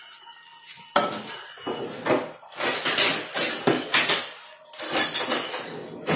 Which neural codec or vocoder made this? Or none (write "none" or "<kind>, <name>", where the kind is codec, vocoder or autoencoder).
none